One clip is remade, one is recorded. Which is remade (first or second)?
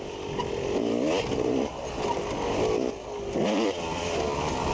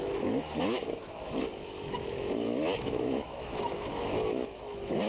second